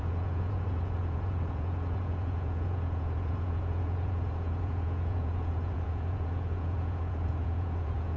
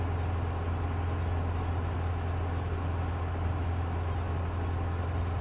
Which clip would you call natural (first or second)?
second